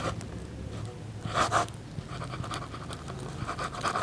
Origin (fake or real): real